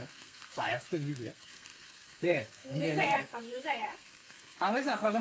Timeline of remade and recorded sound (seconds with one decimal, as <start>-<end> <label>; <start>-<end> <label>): 0.0-5.2 remade